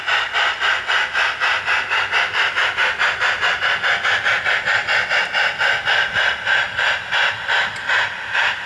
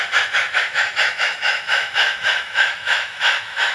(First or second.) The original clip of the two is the first